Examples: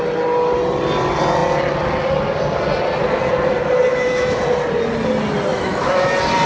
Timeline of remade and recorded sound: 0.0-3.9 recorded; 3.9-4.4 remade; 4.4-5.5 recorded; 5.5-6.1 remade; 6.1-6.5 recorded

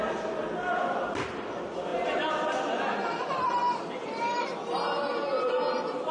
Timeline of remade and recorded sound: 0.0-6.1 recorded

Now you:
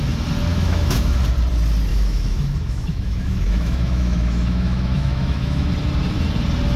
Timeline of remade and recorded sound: 0.0-0.5 recorded; 0.5-1.2 remade; 1.2-1.9 recorded; 1.9-5.7 remade; 5.7-6.8 recorded

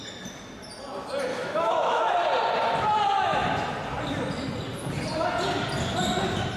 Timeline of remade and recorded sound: 0.0-1.3 recorded; 1.3-2.0 remade; 2.0-6.6 recorded